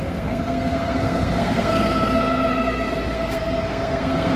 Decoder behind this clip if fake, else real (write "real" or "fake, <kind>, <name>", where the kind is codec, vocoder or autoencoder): fake, codec, SNAC